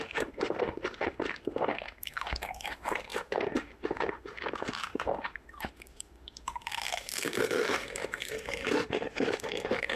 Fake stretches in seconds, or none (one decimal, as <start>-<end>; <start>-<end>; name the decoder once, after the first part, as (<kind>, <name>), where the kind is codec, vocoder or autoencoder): 0.0-10.0 (autoencoder, DAC-VAE)